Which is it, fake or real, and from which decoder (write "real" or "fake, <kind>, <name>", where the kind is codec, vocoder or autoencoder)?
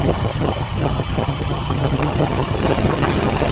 fake, vocoder, HiFi-GAN